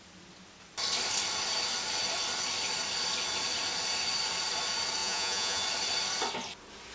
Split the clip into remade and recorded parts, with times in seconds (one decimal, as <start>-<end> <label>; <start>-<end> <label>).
0.0-5.0 recorded; 5.0-5.6 remade; 5.6-6.9 recorded